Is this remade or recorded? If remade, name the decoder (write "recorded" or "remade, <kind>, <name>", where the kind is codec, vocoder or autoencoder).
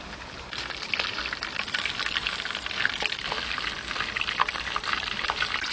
recorded